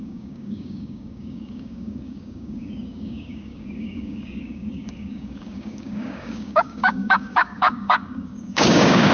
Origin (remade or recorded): remade